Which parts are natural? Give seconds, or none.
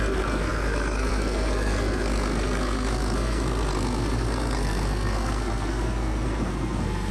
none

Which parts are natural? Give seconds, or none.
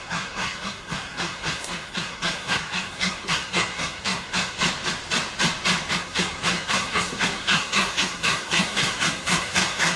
4.6-6.0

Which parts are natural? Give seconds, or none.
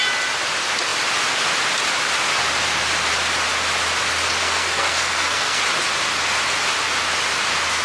0.0-4.4; 5.6-7.8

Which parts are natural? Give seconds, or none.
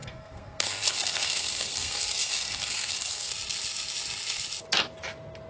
3.3-5.5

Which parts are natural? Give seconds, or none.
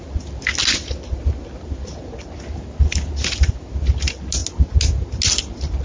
0.0-5.8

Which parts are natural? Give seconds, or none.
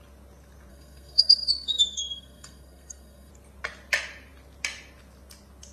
0.0-0.7; 3.3-5.7